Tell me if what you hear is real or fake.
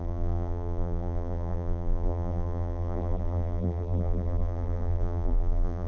fake